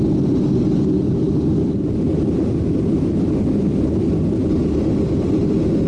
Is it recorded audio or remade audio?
recorded